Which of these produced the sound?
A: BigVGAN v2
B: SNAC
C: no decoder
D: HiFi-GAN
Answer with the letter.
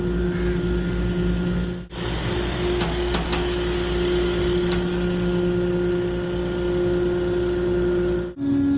C